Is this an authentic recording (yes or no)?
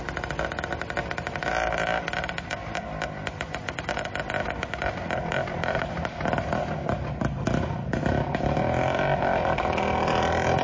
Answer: yes